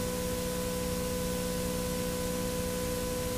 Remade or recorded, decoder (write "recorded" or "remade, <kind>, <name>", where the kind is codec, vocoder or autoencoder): recorded